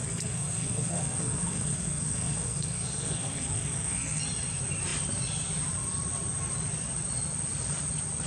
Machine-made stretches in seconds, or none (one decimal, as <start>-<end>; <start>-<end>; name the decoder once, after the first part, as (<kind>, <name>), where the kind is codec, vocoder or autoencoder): 0.0-4.2 (codec, SNAC)